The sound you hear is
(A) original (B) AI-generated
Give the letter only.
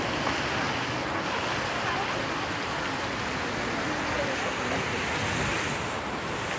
A